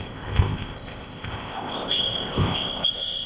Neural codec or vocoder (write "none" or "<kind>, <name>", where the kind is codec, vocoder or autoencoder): codec, ZipCodec